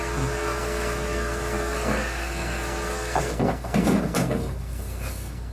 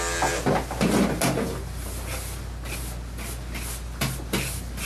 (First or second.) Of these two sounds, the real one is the second